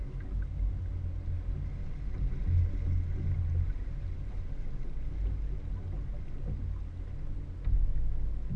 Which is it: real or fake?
real